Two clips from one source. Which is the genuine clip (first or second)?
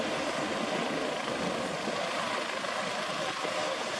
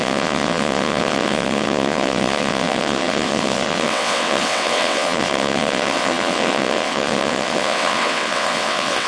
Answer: first